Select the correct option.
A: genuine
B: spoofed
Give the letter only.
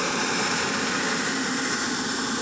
B